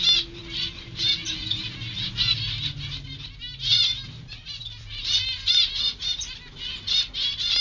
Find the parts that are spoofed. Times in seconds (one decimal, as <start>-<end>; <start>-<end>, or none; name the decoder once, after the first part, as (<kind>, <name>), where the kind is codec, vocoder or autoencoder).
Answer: none